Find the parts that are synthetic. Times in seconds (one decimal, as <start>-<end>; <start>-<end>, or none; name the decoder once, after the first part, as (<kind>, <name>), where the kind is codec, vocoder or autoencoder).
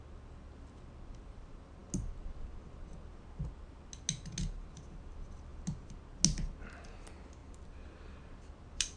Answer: none